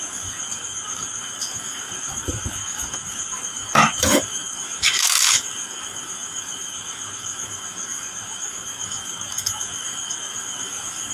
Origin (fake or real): fake